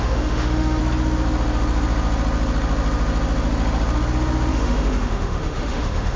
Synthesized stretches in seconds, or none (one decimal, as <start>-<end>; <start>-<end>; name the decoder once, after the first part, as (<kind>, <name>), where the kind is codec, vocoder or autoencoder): 0.0-0.8 (autoencoder, DAC-VAE); 4.5-6.2